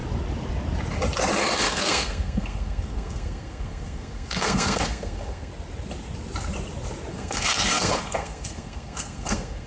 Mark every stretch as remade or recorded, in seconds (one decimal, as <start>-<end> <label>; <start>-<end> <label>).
0.0-1.4 recorded; 1.4-5.5 remade; 5.5-7.1 recorded; 7.1-9.7 remade